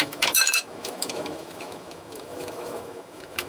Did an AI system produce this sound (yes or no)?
yes